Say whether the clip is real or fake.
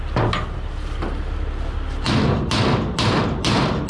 real